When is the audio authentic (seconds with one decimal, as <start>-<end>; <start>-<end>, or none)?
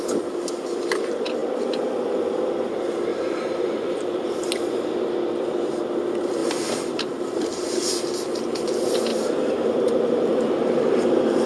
0.0-3.1; 4.5-6.4; 7.9-9.1; 11.0-11.5